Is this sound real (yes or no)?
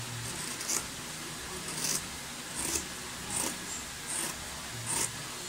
yes